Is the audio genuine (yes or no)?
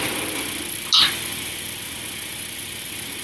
yes